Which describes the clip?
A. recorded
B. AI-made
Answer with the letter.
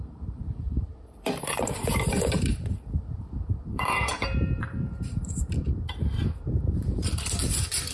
B